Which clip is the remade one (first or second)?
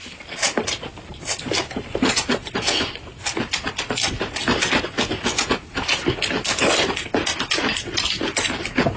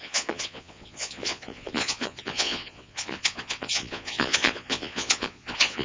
second